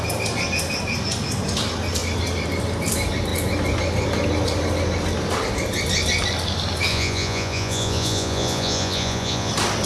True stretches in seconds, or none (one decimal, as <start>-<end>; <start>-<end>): 0.0-6.9; 9.5-9.9